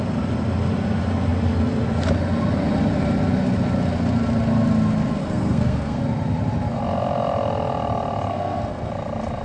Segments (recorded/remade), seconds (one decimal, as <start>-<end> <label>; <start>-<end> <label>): 0.0-5.2 recorded; 5.2-6.0 remade; 6.0-8.3 recorded; 8.3-8.9 remade; 8.9-9.4 recorded